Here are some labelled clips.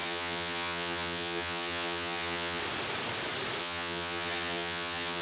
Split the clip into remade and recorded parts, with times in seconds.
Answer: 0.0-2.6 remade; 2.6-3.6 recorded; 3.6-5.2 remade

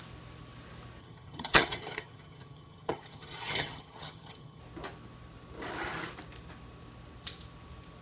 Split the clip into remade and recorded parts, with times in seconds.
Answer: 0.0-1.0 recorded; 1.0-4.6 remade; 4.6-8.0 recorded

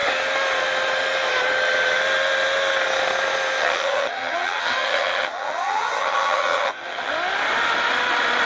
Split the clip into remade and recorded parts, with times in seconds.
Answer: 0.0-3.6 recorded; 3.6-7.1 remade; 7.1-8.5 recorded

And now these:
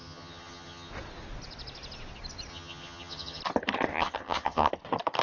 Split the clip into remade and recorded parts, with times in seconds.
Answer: 0.0-0.9 remade; 0.9-2.5 recorded; 2.5-3.4 remade; 3.4-3.9 recorded; 3.9-4.7 remade; 4.7-5.2 recorded